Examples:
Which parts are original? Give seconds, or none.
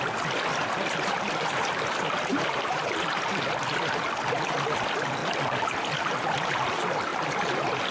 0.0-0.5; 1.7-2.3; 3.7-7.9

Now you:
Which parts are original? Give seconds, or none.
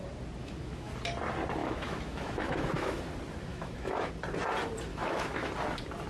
0.0-0.4; 0.9-1.6; 3.0-3.5; 4.1-4.9; 5.5-6.1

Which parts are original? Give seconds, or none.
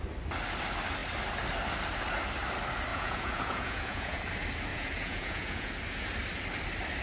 0.0-2.9; 4.2-4.7; 5.7-7.0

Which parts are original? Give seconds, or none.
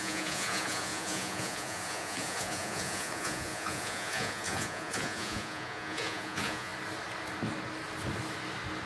6.7-8.9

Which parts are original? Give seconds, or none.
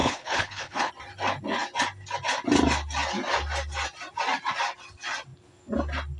0.9-6.2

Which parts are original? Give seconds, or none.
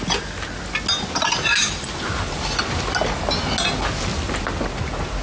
0.0-5.2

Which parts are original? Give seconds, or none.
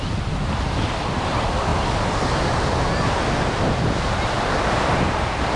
0.0-5.6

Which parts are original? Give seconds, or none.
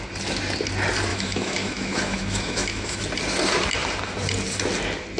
0.0-1.1; 3.0-5.2